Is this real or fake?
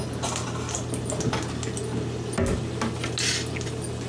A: real